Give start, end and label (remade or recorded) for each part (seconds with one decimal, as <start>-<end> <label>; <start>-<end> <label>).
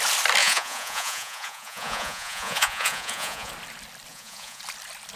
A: 0.0-0.4 recorded; 0.4-3.5 remade; 3.5-4.1 recorded; 4.1-4.6 remade; 4.6-5.2 recorded